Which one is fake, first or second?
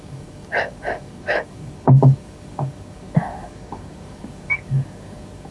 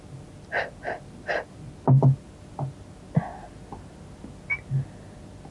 first